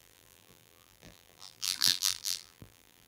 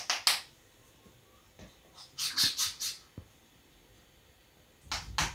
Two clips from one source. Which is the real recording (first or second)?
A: second